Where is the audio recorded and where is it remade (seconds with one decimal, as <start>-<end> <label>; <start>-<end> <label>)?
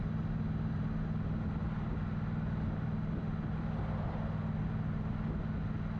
0.0-6.0 recorded